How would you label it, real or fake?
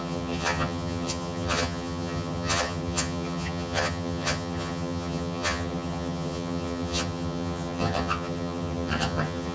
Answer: fake